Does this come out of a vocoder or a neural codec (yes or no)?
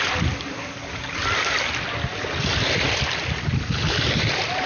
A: no